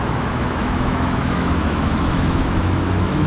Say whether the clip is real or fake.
fake